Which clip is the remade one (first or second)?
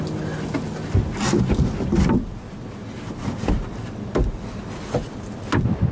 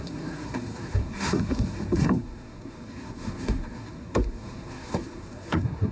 second